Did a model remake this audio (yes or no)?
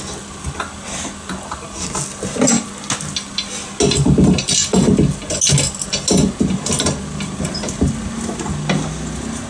no